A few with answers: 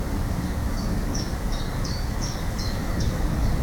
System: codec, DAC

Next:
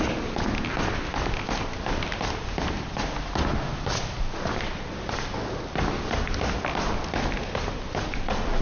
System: none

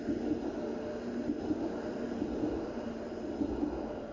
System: none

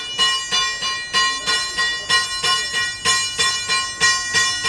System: none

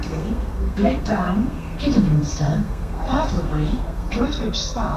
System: codec, SNAC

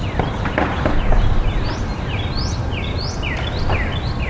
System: none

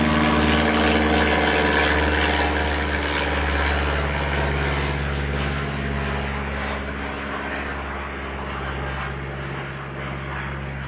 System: none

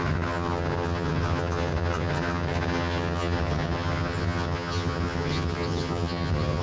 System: vocoder, HiFi-GAN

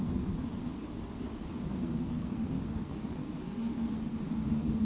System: codec, SNAC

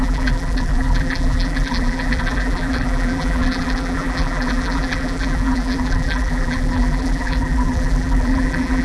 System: vocoder, BigVGAN v2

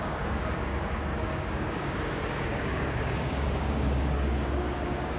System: codec, DAC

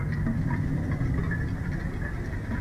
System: none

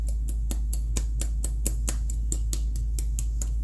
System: none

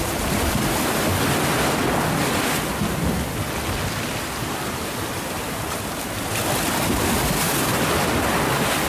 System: none